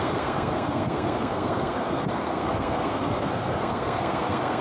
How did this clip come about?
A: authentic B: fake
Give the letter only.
B